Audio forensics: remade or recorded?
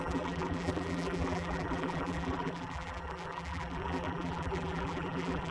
remade